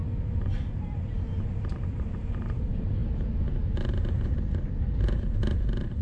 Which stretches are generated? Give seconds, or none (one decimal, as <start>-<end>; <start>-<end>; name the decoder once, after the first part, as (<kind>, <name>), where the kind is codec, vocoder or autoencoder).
0.0-6.0 (vocoder, BigVGAN v2)